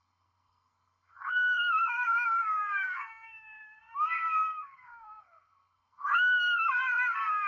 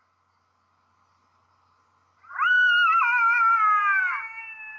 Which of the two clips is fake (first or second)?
first